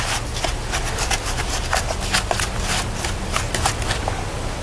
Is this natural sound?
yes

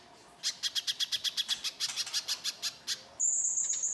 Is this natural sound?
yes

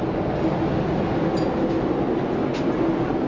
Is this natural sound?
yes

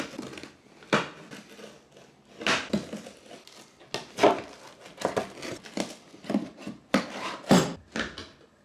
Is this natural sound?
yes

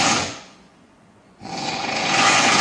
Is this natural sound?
no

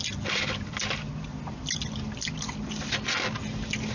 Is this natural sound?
yes